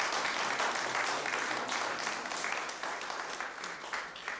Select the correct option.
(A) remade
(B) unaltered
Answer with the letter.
B